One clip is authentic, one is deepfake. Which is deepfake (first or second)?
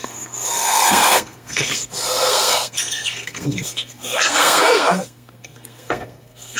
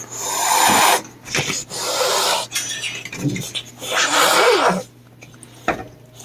first